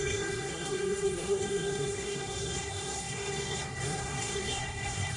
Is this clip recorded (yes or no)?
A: no